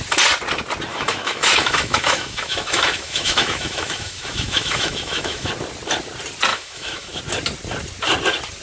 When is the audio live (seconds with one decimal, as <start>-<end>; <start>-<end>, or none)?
0.0-0.9; 5.5-6.5; 7.2-8.6